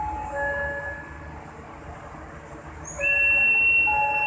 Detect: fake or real real